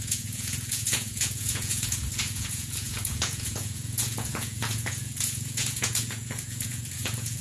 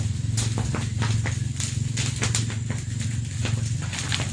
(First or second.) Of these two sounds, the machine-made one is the first